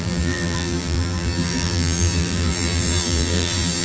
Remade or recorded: remade